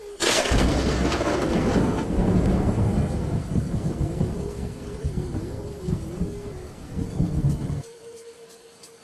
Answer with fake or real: fake